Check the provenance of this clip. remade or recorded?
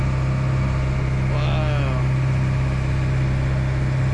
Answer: recorded